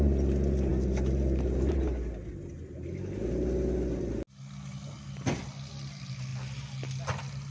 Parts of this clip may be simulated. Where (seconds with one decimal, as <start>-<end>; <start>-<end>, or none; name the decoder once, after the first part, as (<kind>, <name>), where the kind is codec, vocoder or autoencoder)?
none